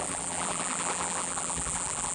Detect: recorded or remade remade